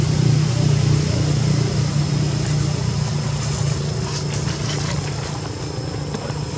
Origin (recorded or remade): recorded